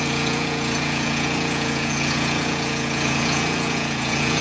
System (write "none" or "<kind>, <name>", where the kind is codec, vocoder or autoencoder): vocoder, Vocos